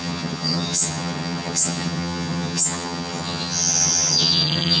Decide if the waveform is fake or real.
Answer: fake